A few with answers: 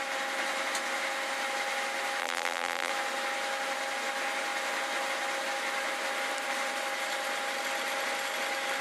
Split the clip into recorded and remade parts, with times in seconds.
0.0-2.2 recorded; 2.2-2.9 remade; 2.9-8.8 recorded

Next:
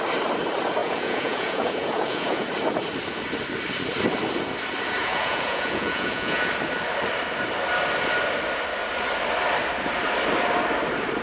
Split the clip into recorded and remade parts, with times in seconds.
0.0-0.8 recorded; 0.8-2.5 remade; 2.5-5.0 recorded; 5.0-6.5 remade; 6.5-11.2 recorded

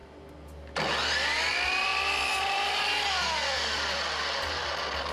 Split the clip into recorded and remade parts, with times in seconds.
0.0-5.1 recorded

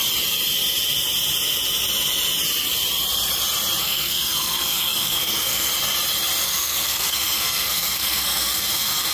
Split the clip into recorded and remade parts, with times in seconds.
0.0-3.8 recorded; 3.8-5.7 remade; 5.7-6.4 recorded; 6.4-9.1 remade

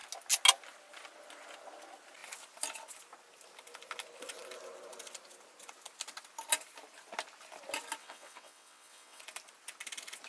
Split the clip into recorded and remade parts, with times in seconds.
0.0-8.0 recorded; 8.0-9.2 remade; 9.2-10.3 recorded

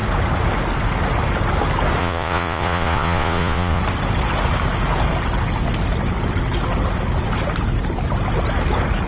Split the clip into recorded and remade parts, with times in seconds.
0.0-2.0 recorded; 2.0-3.8 remade; 3.8-9.1 recorded